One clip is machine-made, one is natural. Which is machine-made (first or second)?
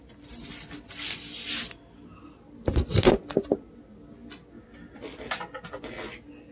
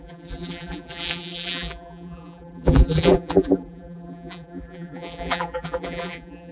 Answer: second